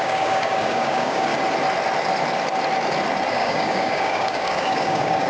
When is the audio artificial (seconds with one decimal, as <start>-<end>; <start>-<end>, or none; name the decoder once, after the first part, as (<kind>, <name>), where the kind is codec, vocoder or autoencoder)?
0.0-1.3 (codec, DAC); 3.3-5.3